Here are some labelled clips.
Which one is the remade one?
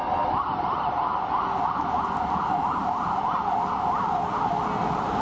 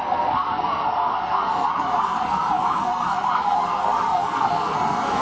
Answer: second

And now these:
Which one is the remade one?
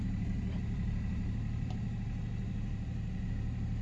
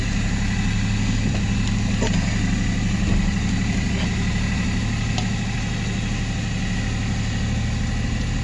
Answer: first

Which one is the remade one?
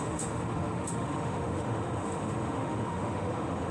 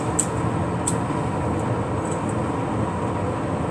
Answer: first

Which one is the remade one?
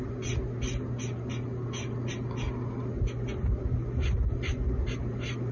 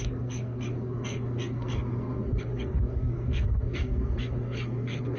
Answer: second